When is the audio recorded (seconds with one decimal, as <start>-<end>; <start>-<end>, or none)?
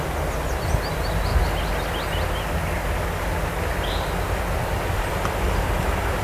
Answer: 0.0-6.2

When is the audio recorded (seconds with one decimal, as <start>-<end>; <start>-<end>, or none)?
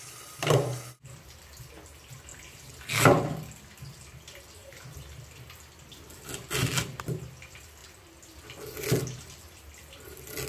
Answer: 0.0-2.3; 2.8-10.5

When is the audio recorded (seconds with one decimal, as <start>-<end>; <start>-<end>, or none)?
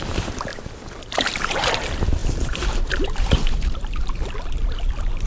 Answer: 0.0-0.5; 1.7-2.2; 4.5-5.3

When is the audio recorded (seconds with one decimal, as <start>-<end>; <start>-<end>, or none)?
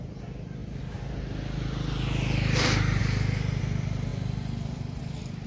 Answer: 0.0-5.5